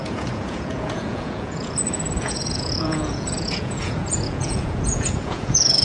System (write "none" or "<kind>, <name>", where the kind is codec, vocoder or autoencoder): vocoder, Vocos